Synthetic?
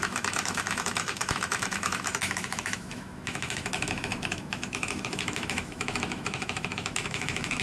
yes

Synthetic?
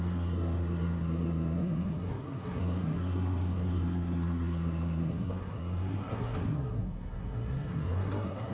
yes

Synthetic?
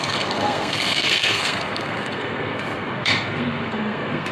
yes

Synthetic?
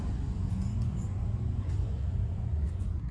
yes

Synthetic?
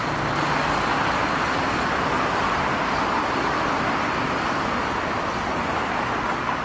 no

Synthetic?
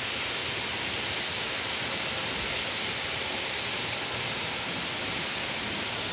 no